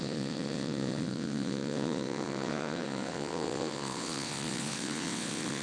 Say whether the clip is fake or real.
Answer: fake